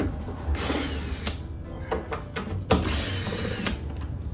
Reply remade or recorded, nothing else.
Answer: recorded